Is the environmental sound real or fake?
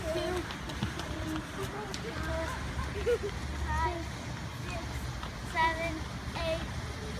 real